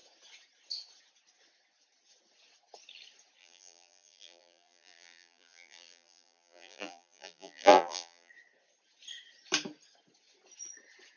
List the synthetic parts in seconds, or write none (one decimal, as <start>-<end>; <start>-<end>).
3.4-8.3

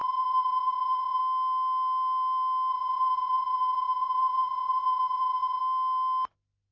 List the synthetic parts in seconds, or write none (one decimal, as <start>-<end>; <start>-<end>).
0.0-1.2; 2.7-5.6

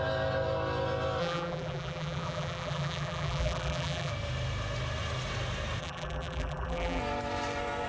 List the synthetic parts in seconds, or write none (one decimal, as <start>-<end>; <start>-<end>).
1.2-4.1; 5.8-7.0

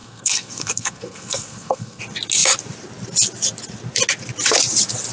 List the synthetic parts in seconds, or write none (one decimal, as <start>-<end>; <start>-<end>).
0.0-2.0

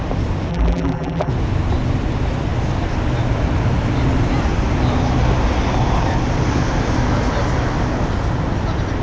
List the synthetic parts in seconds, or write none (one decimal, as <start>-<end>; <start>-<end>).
0.5-1.3

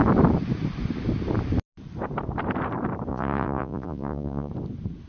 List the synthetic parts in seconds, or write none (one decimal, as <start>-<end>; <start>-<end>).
3.1-4.5

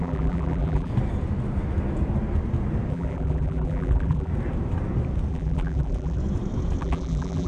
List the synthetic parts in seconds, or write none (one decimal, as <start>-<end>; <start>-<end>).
0.0-0.9; 2.9-4.3; 5.3-6.2; 6.8-7.5